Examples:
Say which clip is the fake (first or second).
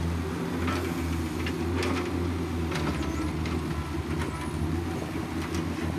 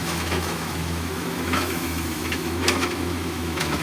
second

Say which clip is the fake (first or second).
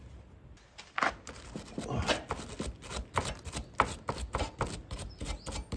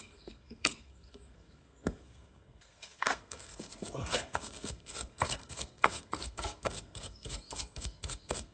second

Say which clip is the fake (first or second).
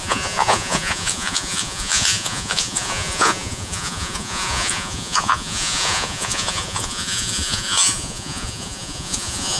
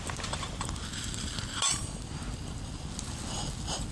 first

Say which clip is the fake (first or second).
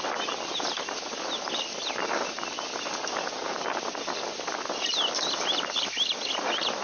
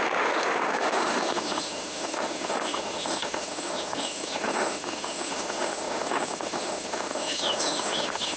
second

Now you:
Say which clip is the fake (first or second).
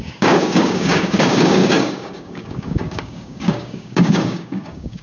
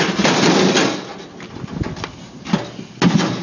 first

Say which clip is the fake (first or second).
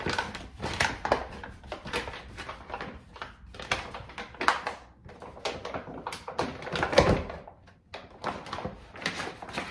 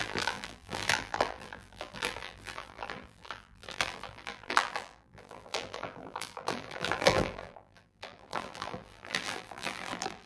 second